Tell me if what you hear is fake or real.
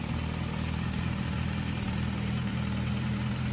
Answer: real